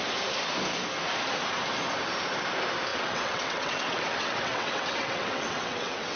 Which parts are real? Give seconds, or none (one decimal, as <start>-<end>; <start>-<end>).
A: 0.0-2.9